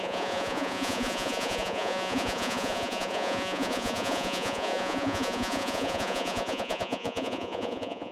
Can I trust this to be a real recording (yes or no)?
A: no